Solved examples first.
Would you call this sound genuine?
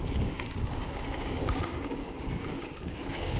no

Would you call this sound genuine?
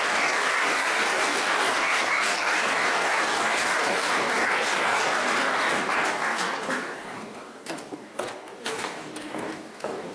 no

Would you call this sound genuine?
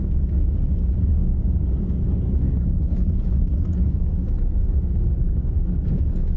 no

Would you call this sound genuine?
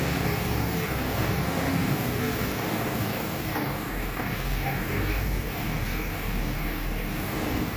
no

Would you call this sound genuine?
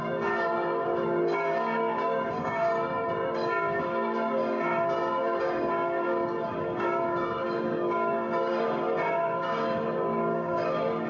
no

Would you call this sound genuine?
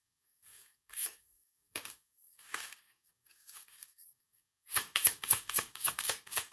no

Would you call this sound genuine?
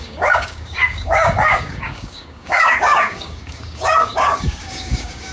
no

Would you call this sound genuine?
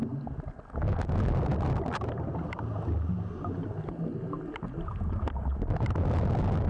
yes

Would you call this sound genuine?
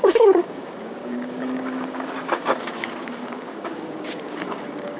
no